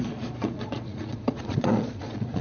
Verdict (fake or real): fake